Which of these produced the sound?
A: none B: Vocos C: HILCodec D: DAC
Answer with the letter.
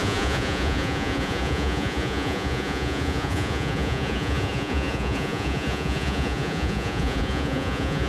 B